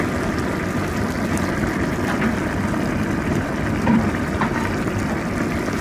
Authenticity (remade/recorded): remade